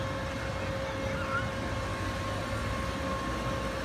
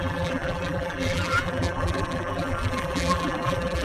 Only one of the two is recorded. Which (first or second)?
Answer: first